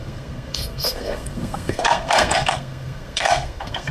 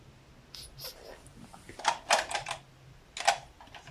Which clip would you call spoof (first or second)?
first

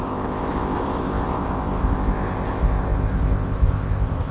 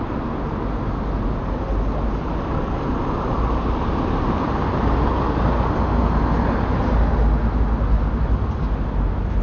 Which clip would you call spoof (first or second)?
first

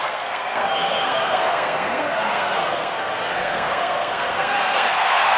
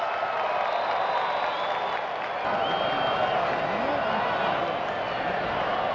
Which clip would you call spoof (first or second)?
first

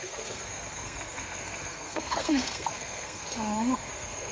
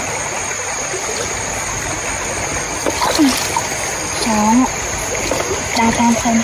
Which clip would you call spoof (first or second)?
first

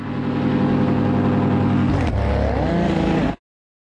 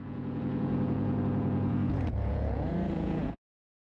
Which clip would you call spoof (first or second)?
second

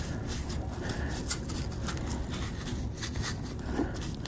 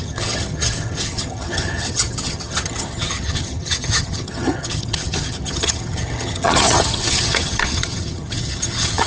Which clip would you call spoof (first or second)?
second